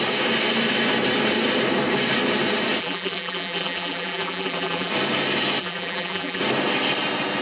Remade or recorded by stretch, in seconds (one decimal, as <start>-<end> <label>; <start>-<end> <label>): 0.0-2.8 recorded; 2.8-4.9 remade; 4.9-5.6 recorded; 5.6-6.4 remade; 6.4-7.4 recorded